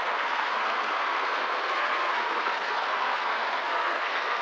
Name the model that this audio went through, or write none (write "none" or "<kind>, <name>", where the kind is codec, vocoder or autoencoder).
codec, SNAC